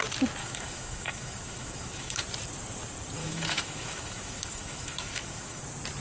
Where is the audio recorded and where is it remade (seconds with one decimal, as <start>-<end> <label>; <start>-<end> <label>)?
0.0-0.4 recorded; 0.4-2.2 remade; 2.2-3.2 recorded; 3.2-5.6 remade; 5.6-6.0 recorded